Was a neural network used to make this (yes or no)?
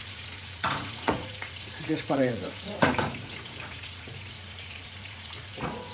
yes